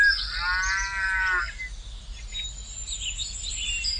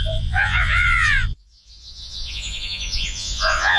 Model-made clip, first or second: second